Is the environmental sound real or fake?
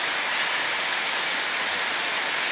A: real